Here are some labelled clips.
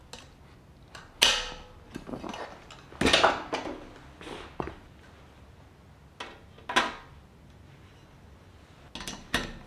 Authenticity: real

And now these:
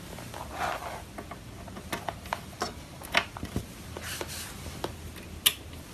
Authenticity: real